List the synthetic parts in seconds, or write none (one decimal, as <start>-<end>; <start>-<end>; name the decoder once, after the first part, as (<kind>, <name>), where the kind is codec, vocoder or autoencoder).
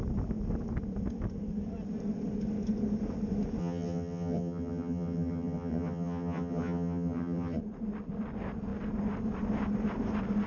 3.6-7.6 (vocoder, HiFi-GAN)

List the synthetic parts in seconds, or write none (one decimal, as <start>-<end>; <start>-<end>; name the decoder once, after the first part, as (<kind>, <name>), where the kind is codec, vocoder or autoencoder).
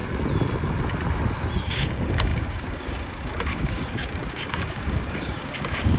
1.6-6.0 (codec, DAC)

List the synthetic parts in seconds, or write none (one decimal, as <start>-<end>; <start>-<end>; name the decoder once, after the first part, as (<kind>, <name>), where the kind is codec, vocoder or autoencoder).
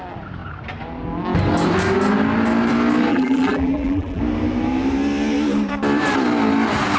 3.1-4.2 (vocoder, BigVGAN v2)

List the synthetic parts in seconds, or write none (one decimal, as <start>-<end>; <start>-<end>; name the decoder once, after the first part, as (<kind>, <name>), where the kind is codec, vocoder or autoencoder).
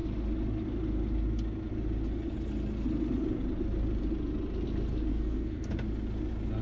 5.1-5.7 (codec, SNAC)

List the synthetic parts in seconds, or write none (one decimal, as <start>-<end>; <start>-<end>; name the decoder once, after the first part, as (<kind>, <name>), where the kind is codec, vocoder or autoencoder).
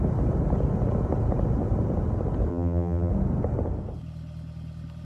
2.5-3.1 (vocoder, BigVGAN v2)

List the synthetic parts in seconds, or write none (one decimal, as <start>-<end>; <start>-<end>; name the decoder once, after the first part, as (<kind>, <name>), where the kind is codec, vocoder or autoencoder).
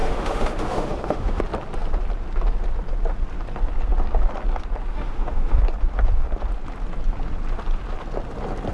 0.0-1.4 (autoencoder, DAC-VAE); 4.9-5.6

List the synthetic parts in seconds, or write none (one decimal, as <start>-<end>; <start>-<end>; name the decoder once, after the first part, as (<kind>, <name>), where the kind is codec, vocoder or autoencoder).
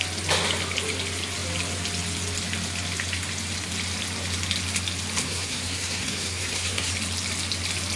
5.2-6.9 (codec, SNAC)